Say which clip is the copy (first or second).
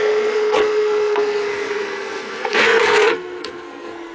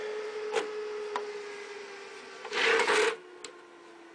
first